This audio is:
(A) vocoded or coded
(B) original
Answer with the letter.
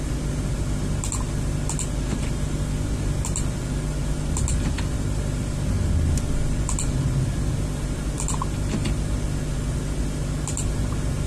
B